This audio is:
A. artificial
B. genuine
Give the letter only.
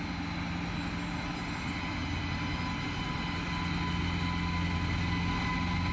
B